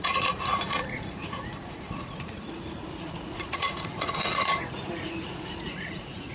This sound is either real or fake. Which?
fake